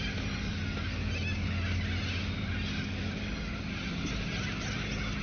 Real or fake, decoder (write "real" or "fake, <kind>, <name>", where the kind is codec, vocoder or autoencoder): real